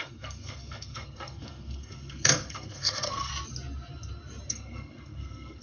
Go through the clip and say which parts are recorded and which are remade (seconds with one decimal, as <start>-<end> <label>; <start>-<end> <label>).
0.0-3.3 remade; 3.3-4.5 recorded; 4.5-5.6 remade

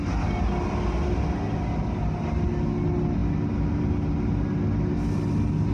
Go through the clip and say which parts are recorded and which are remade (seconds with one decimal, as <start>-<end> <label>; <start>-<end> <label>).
0.0-5.7 recorded

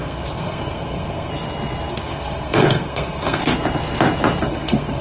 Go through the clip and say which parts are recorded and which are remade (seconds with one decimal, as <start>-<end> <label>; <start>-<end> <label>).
0.0-1.3 remade; 1.3-1.9 recorded; 1.9-3.4 remade; 3.4-4.4 recorded; 4.4-5.0 remade

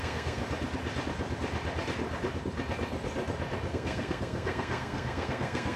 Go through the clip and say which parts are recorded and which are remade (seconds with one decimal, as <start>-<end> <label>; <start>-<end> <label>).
0.0-0.4 remade; 0.4-3.7 recorded; 3.7-5.8 remade